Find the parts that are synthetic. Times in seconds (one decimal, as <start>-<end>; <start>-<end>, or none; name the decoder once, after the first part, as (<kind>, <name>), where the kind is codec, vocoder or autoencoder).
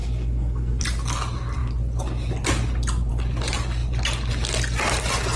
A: 0.0-0.8 (codec, SNAC)